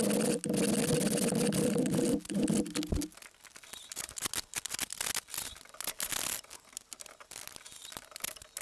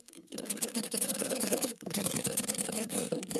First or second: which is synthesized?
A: second